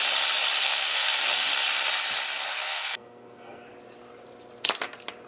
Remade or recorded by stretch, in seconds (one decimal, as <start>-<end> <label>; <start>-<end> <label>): 0.0-0.6 recorded; 0.6-1.2 remade; 1.2-2.5 recorded; 2.5-3.7 remade; 3.7-5.3 recorded